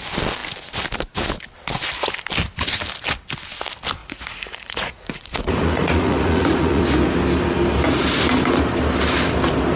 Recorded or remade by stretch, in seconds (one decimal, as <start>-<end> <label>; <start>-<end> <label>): 0.0-4.0 recorded; 4.0-6.8 remade; 6.8-9.8 recorded